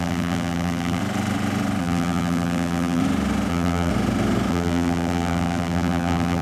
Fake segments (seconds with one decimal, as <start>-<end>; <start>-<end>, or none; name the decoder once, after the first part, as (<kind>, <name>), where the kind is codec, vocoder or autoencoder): 0.0-1.0 (vocoder, BigVGAN v2); 1.8-3.0; 3.5-3.9; 4.5-6.4